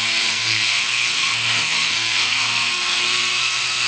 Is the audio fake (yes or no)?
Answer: yes